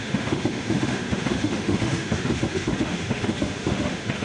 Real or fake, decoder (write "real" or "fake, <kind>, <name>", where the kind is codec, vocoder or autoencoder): fake, autoencoder, DAC-VAE